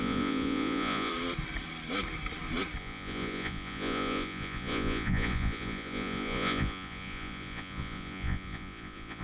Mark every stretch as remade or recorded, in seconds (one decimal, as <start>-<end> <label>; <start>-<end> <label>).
0.0-1.1 remade; 1.1-2.8 recorded; 2.8-9.2 remade